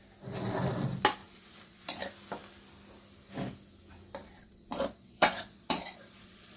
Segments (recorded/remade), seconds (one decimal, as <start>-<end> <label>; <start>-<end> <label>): 0.0-1.2 recorded; 1.2-2.0 remade; 2.0-4.2 recorded; 4.2-6.6 remade